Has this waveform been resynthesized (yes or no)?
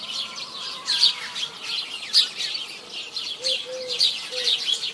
yes